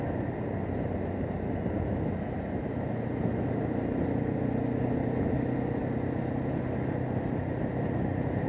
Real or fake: real